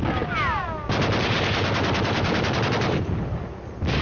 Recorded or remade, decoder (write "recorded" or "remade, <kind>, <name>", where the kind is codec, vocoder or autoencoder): recorded